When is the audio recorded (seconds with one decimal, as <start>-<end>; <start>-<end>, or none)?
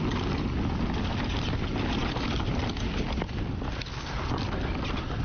0.0-5.2